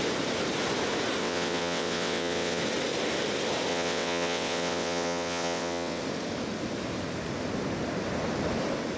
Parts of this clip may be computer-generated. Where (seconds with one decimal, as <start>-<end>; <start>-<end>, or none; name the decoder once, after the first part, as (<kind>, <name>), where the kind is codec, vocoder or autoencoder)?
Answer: 1.2-2.6 (vocoder, WaveNeXt); 3.7-6.0